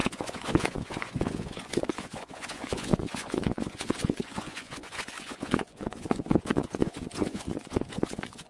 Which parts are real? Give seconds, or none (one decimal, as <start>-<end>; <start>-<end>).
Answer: none